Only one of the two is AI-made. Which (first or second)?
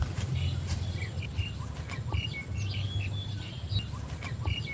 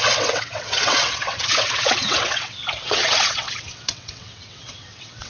second